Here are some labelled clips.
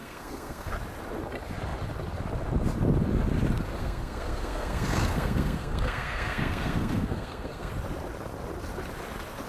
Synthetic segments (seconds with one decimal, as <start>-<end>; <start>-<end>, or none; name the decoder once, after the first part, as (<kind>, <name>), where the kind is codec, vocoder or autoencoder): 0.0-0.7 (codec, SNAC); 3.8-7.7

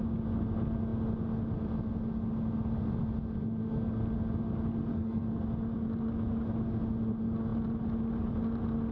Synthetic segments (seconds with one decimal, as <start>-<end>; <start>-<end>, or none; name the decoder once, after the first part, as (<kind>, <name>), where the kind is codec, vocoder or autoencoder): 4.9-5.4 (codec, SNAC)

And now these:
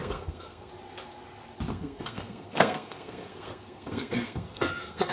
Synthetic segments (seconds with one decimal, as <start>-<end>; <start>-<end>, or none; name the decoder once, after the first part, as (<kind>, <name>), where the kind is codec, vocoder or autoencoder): 0.0-0.7 (codec, SNAC); 1.7-5.1

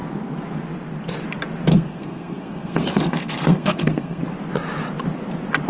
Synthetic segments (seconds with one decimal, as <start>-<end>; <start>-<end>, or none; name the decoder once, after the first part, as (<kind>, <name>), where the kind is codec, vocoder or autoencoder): 1.7-4.2 (codec, SNAC)

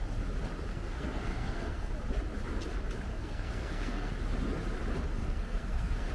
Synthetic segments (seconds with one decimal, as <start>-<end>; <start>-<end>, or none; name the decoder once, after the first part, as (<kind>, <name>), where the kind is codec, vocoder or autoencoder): 0.7-1.9 (codec, SNAC); 3.1-4.1; 5.2-6.1